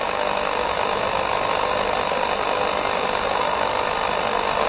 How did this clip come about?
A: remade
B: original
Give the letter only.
B